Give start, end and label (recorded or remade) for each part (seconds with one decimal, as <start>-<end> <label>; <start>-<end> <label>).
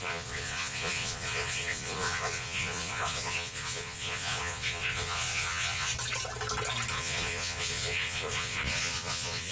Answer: 0.0-5.9 remade; 5.9-6.9 recorded; 6.9-9.5 remade